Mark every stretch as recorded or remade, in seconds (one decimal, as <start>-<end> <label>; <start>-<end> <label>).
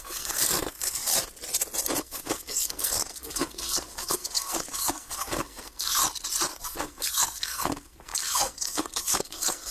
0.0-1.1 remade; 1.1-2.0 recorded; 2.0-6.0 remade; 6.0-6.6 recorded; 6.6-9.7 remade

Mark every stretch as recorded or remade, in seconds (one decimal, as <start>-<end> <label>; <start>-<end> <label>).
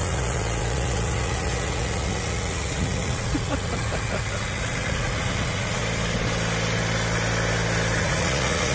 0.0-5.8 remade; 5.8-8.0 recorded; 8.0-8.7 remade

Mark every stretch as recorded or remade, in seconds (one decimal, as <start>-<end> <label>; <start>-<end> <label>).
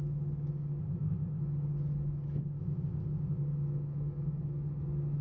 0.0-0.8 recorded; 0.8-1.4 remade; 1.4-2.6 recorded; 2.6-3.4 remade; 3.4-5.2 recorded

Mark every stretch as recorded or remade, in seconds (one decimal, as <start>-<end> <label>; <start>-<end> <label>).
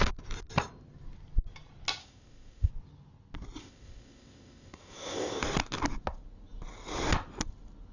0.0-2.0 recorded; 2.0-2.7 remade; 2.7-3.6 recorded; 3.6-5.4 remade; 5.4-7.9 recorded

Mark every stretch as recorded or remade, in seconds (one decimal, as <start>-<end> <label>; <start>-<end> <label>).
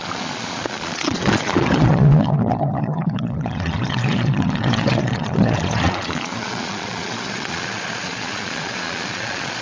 0.0-9.6 remade